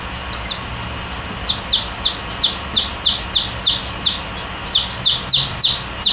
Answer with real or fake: real